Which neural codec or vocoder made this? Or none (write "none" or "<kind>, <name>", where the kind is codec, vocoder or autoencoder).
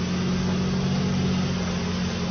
none